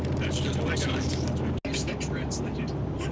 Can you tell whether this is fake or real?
real